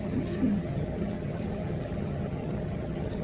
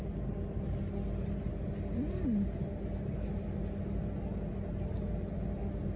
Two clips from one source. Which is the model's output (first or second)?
first